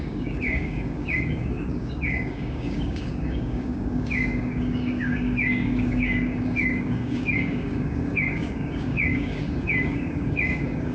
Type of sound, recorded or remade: remade